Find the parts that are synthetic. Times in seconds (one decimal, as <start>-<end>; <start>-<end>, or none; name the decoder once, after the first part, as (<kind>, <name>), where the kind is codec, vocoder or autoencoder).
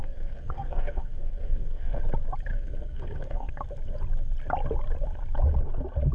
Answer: 0.0-2.0 (codec, SNAC); 2.5-3.5